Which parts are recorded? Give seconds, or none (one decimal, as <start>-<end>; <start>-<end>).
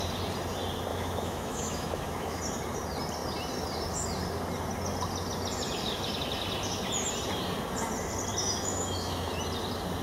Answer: 0.0-0.9; 2.4-8.4; 9.3-10.0